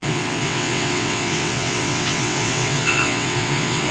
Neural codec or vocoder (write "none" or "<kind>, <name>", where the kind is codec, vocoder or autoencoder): vocoder, WaveNeXt